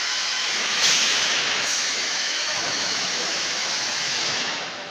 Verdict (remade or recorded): remade